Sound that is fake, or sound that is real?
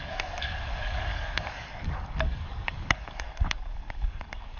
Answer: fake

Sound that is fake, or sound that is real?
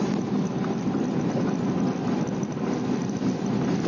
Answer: real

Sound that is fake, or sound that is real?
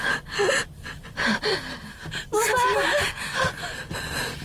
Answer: real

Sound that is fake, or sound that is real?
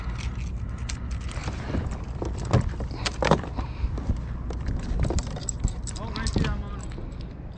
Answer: real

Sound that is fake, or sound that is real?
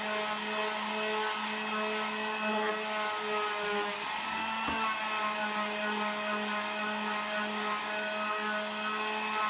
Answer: real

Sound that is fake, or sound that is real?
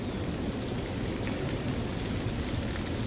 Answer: real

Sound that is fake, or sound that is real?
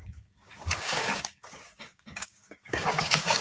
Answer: fake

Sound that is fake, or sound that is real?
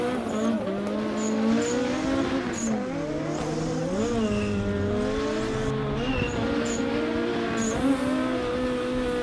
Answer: real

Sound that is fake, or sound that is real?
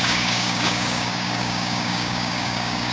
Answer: fake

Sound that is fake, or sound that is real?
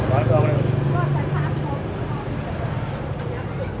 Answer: real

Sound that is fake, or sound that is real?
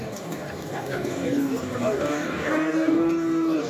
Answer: fake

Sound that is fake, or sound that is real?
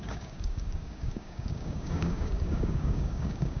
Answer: fake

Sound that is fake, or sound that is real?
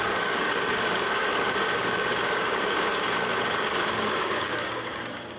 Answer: fake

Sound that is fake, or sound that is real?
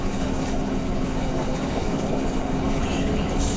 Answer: fake